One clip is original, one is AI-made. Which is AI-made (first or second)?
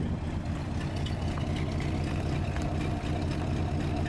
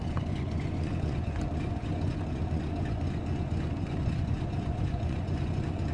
second